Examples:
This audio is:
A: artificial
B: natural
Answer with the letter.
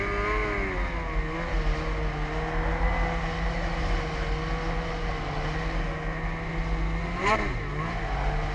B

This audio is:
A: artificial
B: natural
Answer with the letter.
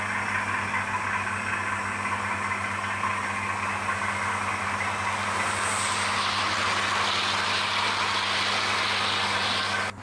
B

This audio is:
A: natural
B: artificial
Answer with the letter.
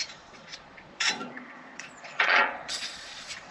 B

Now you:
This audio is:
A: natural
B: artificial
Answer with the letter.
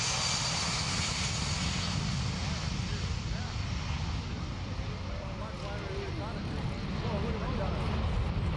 A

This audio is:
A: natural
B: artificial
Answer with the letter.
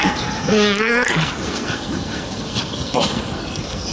B